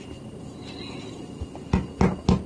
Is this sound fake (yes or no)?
no